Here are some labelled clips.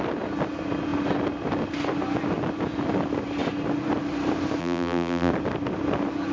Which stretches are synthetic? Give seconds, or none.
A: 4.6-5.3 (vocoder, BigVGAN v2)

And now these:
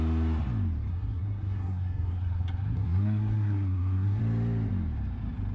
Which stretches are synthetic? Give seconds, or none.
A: 0.9-4.2 (codec, SNAC)

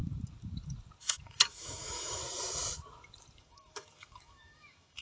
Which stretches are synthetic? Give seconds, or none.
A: 1.0-2.2 (autoencoder, DAC-VAE); 3.4-5.0

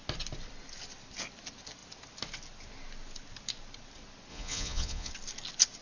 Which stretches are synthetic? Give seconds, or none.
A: 4.3-5.1 (vocoder, Vocos)

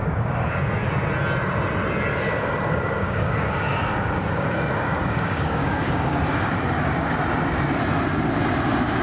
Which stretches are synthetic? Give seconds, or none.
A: 0.0-0.5 (codec, DAC); 2.1-7.2

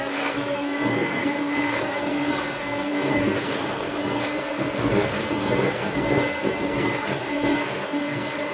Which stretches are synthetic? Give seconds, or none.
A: 0.0-8.5 (codec, SNAC)

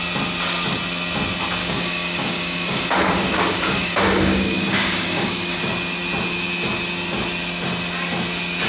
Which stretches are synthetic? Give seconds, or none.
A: 1.6-5.6 (codec, DAC)